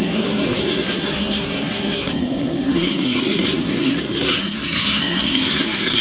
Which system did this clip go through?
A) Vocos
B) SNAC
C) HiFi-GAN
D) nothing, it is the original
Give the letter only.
B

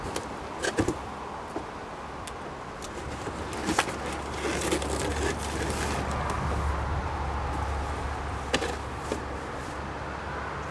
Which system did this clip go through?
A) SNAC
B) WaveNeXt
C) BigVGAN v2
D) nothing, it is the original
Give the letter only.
D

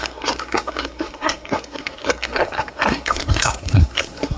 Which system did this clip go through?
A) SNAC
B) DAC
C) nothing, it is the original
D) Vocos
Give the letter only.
A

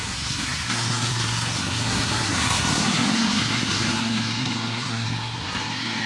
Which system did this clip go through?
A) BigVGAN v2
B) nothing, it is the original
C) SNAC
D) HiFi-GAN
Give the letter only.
C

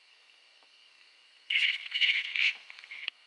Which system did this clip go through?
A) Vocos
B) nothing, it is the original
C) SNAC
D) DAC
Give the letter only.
C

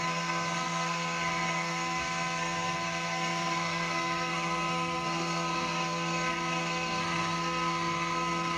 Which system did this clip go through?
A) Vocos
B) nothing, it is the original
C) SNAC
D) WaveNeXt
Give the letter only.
C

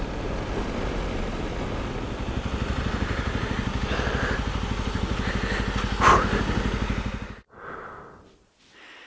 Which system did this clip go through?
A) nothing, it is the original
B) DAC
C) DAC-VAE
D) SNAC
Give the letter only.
A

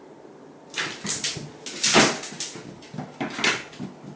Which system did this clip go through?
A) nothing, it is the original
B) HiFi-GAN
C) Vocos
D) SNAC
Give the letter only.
A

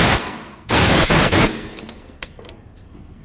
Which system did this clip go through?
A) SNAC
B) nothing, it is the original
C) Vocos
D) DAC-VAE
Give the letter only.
A